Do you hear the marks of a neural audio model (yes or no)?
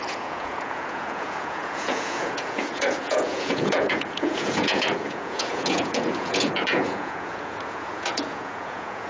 yes